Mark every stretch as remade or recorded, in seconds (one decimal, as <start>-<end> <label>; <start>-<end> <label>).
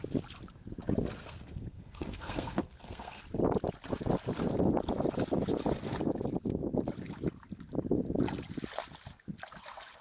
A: 0.0-1.2 recorded; 1.2-3.2 remade; 3.2-10.0 recorded